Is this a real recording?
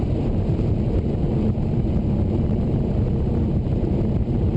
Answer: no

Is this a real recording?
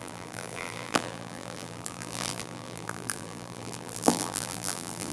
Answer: no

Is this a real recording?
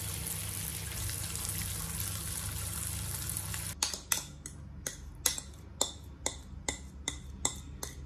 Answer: yes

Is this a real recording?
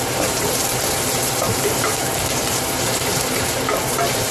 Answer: no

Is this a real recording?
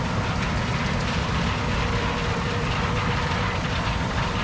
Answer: no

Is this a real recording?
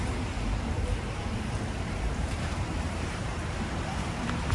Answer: no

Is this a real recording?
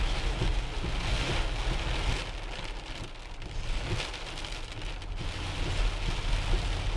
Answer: yes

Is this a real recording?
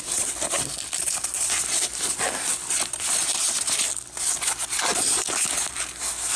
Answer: yes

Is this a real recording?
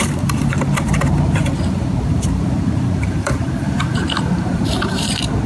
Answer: no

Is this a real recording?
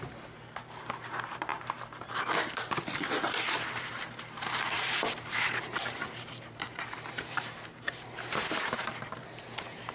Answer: no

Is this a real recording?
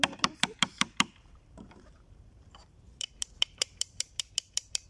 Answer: no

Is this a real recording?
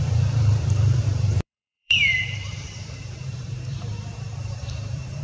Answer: no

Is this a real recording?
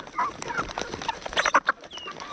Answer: no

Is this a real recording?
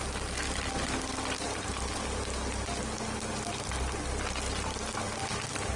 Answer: yes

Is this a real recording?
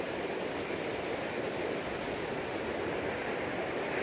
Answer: yes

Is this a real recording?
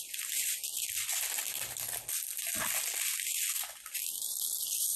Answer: yes